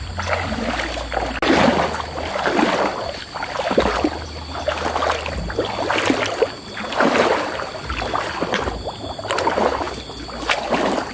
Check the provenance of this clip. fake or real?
real